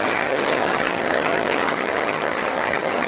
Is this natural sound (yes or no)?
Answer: no